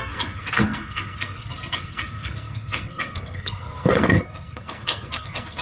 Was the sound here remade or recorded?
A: remade